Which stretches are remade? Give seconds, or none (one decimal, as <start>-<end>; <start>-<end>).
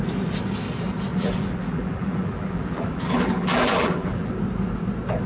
1.1-4.3